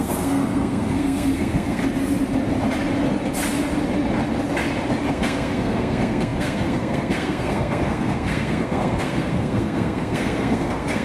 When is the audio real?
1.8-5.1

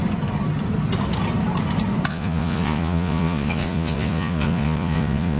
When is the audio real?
0.0-2.1